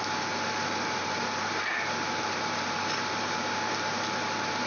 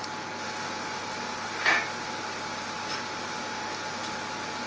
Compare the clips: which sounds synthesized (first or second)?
first